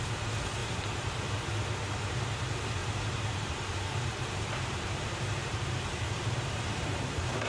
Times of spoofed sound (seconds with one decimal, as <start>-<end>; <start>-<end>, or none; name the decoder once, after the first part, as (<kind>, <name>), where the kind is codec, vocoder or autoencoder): 0.6-1.4 (vocoder, BigVGAN v2); 2.8-7.5